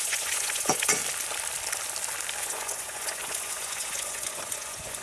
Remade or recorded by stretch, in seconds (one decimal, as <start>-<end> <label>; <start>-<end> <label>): 0.0-1.0 remade; 1.0-2.4 recorded; 2.4-5.0 remade